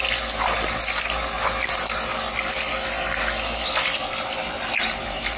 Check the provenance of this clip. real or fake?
real